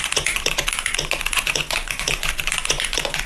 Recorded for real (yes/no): no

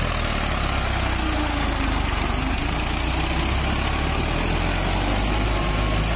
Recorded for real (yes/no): yes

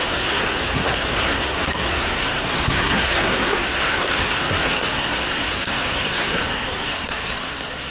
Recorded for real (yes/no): no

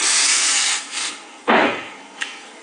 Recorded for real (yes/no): no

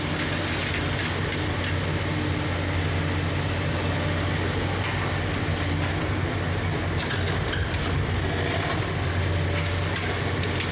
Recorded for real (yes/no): yes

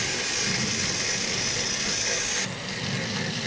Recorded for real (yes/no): yes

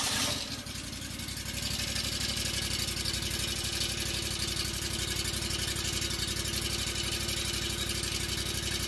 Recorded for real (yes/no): yes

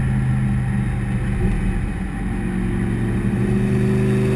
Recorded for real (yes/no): yes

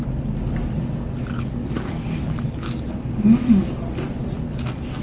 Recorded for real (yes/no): yes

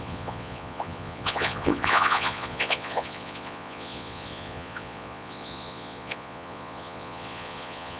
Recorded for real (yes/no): no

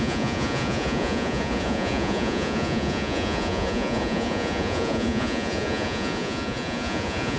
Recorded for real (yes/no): no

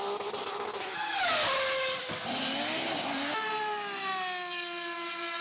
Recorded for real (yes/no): yes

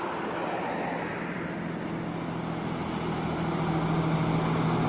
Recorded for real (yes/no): yes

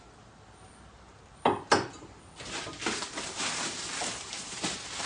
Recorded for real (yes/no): yes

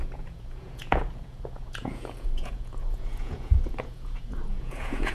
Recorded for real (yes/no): no